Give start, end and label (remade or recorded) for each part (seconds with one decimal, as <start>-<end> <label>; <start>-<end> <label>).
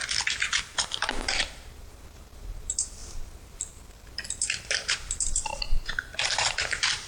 0.0-0.6 recorded; 0.6-7.1 remade